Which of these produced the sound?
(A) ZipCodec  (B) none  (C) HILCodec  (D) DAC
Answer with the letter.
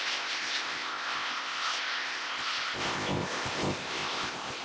A